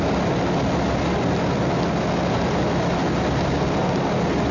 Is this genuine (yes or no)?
yes